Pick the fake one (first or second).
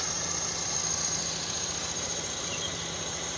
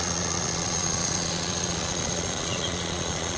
second